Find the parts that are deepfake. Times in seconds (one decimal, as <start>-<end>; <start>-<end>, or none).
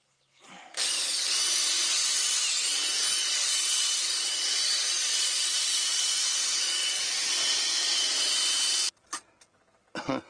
3.2-7.0